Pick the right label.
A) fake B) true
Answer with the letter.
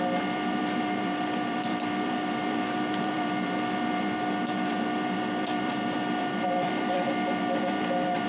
A